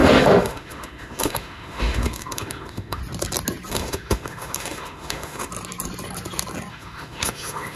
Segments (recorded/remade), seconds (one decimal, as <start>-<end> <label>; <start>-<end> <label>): 0.0-3.0 remade; 3.0-3.7 recorded; 3.7-5.5 remade; 5.5-6.7 recorded; 6.7-7.8 remade